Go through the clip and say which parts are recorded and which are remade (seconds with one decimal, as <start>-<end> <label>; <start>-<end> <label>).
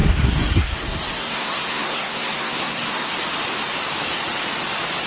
0.0-3.1 remade; 3.1-5.1 recorded